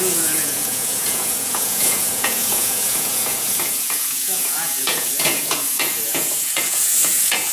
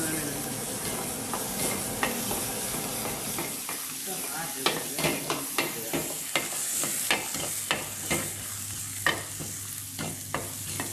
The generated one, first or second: first